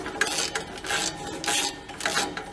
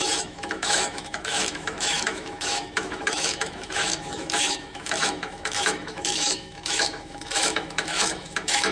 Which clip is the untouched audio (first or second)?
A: first